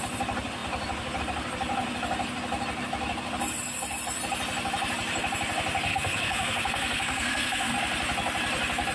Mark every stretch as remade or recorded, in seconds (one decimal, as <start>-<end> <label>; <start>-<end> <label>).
0.0-5.9 recorded; 5.9-7.7 remade; 7.7-8.9 recorded